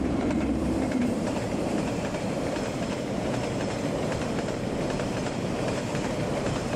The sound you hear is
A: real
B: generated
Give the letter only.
B